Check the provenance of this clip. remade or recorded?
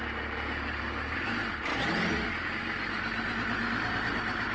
recorded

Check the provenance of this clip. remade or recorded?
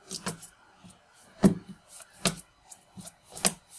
recorded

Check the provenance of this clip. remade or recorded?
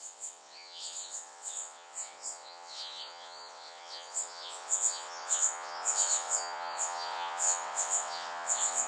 remade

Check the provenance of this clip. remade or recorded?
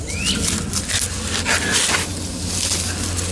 recorded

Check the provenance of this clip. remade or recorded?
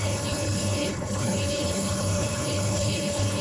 remade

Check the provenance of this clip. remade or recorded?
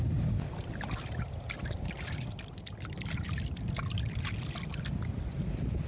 recorded